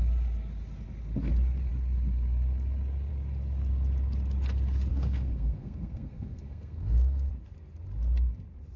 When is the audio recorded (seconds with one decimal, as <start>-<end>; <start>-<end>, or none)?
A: 0.0-4.9; 7.3-8.8